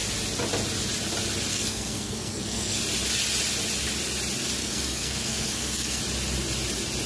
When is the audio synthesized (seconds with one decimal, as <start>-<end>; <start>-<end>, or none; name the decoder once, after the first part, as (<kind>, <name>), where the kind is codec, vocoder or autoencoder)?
1.5-2.8 (codec, SNAC); 4.6-6.0